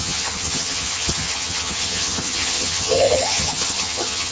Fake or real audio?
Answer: fake